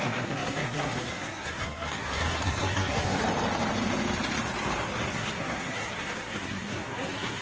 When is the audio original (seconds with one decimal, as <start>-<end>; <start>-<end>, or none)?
3.2-5.1